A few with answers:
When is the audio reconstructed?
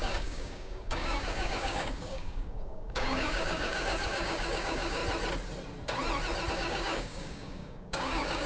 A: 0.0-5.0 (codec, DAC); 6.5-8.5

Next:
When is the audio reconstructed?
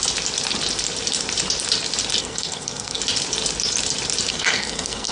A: 2.2-3.0 (codec, SNAC); 4.3-5.1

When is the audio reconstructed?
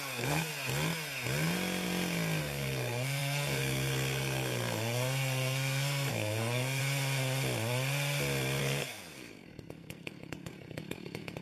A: 0.0-0.5 (codec, SNAC); 2.4-6.8; 8.6-11.4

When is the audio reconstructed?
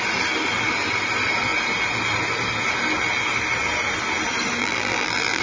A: 4.6-5.4 (vocoder, BigVGAN v2)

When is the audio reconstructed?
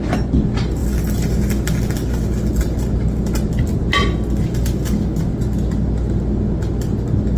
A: none